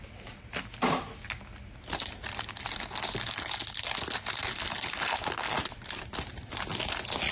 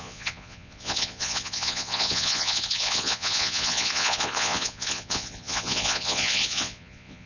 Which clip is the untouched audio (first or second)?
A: first